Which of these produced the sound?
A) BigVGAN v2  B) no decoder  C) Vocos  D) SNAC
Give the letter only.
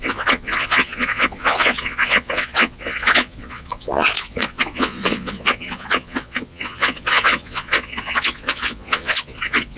C